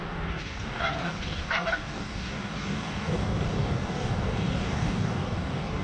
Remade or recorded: remade